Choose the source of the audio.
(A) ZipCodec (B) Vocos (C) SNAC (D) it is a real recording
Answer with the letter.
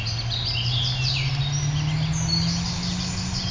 D